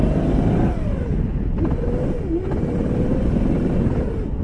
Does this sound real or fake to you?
real